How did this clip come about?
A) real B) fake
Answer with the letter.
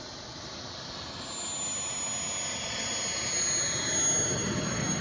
A